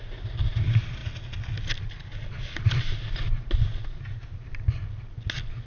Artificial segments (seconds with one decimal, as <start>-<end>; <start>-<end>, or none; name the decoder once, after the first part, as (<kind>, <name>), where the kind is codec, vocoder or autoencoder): none